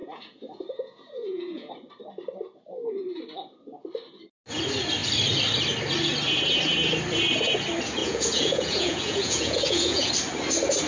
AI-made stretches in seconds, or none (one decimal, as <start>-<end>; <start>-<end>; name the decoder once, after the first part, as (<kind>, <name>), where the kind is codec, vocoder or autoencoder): 0.0-1.7 (vocoder, Vocos); 8.0-10.1